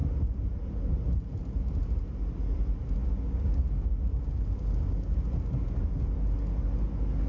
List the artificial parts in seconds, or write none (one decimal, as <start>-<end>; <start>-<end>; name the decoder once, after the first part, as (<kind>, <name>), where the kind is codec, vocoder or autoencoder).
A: 3.0-3.6 (codec, DAC); 4.1-5.2